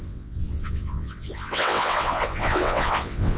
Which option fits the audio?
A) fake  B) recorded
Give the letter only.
A